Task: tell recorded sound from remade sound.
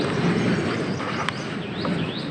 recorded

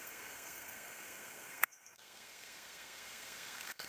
remade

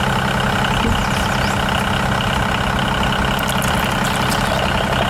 recorded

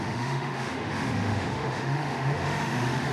remade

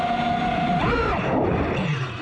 recorded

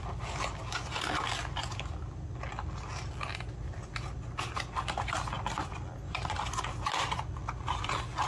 recorded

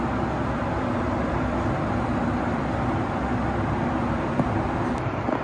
recorded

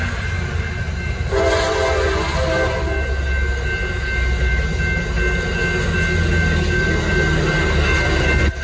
recorded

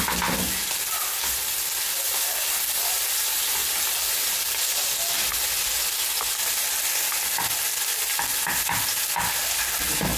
recorded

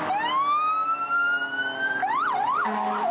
recorded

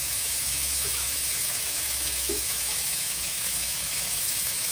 remade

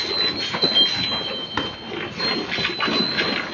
recorded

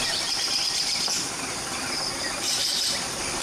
remade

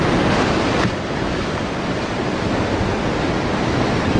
recorded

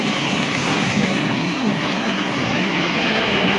remade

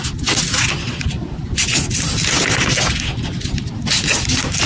recorded